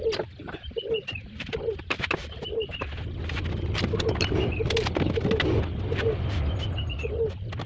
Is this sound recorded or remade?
recorded